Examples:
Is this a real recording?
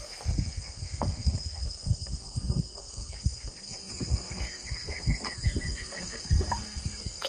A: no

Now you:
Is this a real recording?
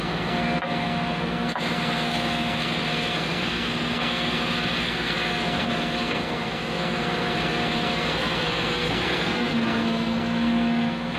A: no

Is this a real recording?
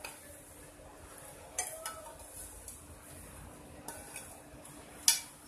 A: yes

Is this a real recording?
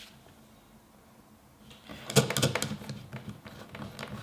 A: yes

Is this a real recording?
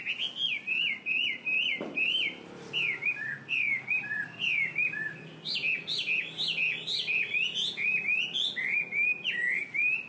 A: yes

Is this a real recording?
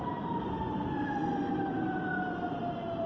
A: yes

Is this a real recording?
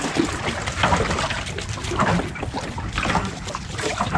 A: yes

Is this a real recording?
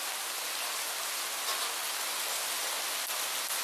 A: yes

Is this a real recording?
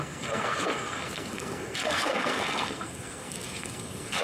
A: no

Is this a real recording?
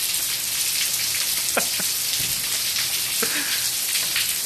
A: yes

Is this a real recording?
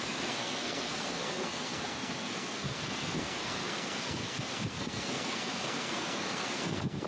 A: no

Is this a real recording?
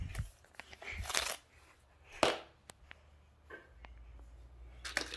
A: yes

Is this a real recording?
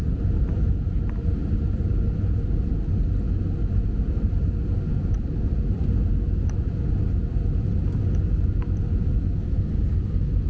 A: yes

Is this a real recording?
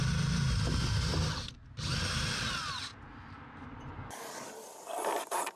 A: yes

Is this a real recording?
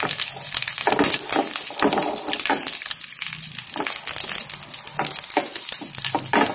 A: yes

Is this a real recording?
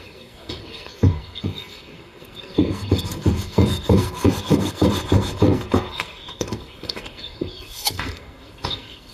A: no